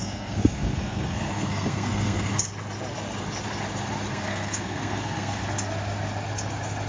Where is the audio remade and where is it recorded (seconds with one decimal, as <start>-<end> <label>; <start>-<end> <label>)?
0.0-2.3 remade; 2.3-4.1 recorded; 4.1-5.4 remade; 5.4-6.9 recorded